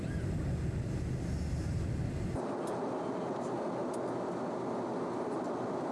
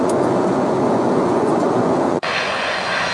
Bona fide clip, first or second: first